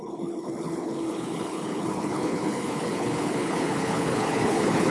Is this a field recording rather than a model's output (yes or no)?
no